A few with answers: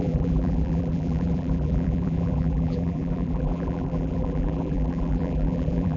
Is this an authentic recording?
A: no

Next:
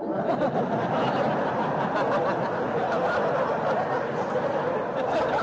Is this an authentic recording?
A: yes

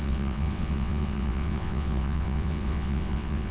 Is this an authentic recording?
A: no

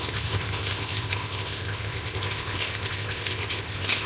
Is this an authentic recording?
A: no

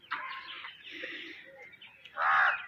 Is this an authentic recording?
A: yes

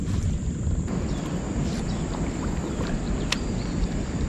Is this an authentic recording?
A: yes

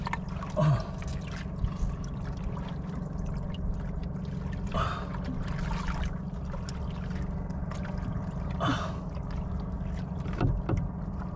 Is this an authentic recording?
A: yes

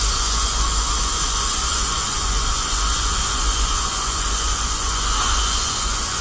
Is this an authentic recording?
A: no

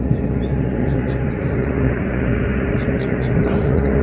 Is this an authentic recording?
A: no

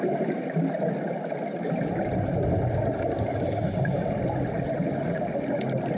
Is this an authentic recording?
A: yes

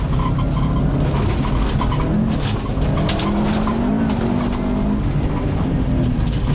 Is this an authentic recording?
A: yes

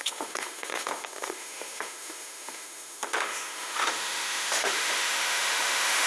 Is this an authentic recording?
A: no